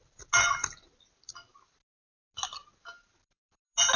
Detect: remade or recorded recorded